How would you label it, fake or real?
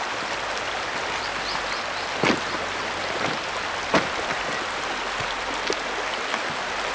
real